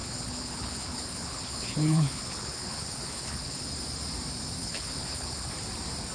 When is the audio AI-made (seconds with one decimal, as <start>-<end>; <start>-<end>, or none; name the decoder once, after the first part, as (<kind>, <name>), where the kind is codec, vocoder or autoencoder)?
0.0-3.7 (codec, HILCodec); 4.6-5.5